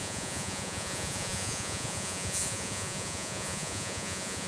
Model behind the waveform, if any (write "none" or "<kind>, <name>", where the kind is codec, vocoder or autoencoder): vocoder, Vocos